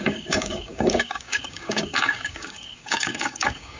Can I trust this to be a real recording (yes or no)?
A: no